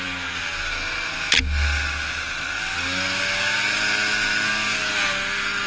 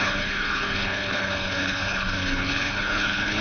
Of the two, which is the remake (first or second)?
second